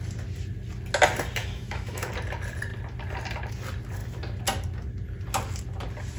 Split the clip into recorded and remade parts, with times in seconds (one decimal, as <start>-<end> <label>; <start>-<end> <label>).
0.0-1.4 recorded; 1.4-2.1 remade; 2.1-6.2 recorded